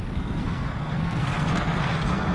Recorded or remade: remade